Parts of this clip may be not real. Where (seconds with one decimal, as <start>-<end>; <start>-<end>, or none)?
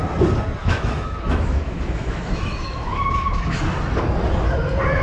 0.6-3.6